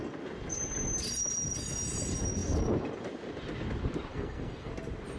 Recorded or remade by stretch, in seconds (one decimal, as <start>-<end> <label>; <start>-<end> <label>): 0.0-4.1 recorded; 4.1-4.7 remade; 4.7-5.2 recorded